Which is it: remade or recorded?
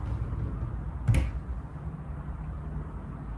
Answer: recorded